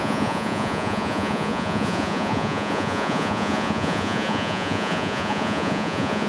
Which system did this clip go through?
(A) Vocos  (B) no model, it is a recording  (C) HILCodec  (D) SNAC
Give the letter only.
A